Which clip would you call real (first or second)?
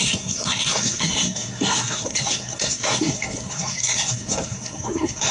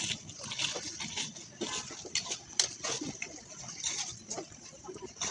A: second